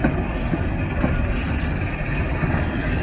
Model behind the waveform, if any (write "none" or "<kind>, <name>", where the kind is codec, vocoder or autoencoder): none